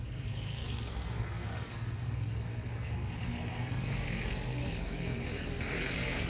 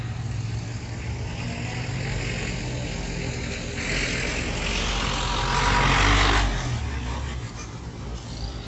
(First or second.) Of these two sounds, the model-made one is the first